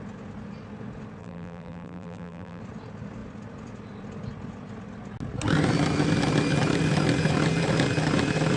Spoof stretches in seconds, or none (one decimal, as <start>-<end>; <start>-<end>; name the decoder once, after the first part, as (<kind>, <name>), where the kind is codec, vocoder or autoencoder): 1.2-2.6 (vocoder, BigVGAN v2)

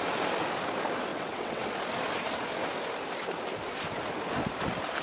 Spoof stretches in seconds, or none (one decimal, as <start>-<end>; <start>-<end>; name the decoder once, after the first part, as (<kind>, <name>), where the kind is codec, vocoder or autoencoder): 1.1-1.7 (vocoder, WaveNeXt)

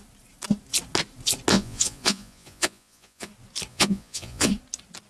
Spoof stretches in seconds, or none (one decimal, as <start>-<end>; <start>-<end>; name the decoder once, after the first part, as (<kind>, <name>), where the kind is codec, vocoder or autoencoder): 1.5-3.3 (vocoder, Vocos); 3.7-4.5

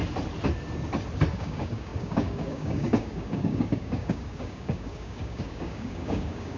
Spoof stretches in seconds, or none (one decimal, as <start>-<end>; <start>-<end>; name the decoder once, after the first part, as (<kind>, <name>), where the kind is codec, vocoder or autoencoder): 1.3-6.6 (codec, DAC)

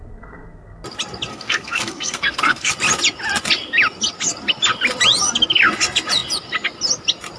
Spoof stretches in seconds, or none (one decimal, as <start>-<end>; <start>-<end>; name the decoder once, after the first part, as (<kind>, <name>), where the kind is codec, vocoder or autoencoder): 1.3-2.7 (codec, SNAC)